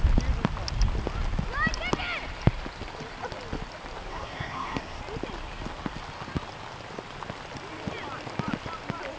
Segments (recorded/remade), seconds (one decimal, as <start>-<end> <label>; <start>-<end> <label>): 0.0-4.1 recorded; 4.1-5.0 remade; 5.0-9.2 recorded